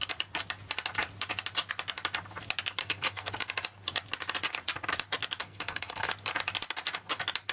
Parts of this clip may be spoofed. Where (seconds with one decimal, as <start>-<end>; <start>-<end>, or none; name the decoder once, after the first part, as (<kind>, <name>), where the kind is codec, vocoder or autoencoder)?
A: 2.8-3.3 (codec, SNAC); 5.4-6.1

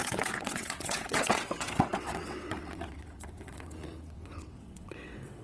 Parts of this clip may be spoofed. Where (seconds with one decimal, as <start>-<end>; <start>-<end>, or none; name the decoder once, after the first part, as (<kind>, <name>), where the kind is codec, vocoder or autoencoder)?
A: 0.0-5.4 (vocoder, WaveNeXt)